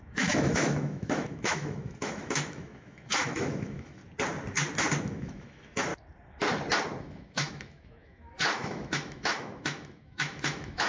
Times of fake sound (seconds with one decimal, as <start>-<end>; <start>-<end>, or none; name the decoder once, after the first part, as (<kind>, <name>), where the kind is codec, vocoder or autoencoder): 0.0-4.0 (autoencoder, DAC-VAE); 5.0-5.9; 7.0-10.9